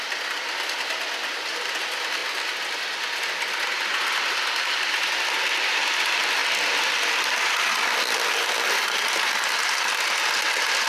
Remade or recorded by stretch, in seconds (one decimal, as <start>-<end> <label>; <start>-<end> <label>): 0.0-10.9 recorded